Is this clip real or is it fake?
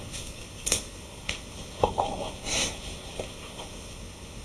fake